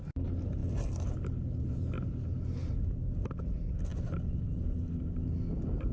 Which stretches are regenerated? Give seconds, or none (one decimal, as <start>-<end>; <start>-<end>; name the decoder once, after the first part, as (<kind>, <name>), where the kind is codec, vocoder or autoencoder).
none